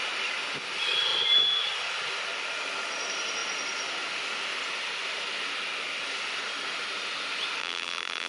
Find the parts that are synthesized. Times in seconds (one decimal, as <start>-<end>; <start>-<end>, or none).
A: 7.6-8.3